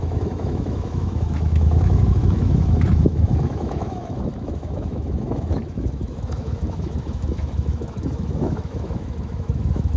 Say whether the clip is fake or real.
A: fake